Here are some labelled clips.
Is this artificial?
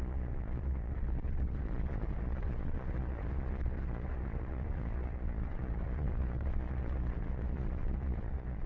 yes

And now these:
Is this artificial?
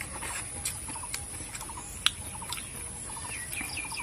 no